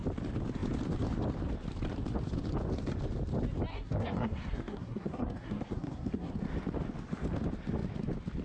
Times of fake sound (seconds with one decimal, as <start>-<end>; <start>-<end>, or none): 3.7-6.3